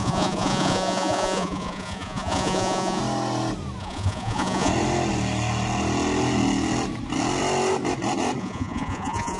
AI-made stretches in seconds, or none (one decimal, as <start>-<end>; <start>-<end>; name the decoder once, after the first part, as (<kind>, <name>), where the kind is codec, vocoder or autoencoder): 0.0-3.0 (vocoder, Vocos); 3.8-4.7; 8.4-9.4